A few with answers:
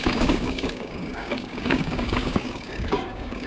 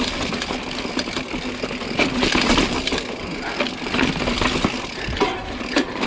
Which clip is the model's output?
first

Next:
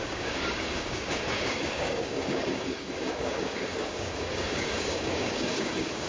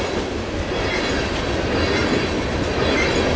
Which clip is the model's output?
first